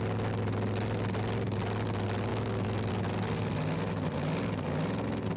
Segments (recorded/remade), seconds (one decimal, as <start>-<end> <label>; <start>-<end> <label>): 0.0-2.3 recorded; 2.3-2.9 remade; 2.9-5.4 recorded